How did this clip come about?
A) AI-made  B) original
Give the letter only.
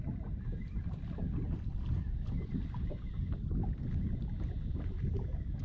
B